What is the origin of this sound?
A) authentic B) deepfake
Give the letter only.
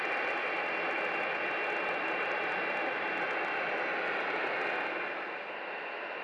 A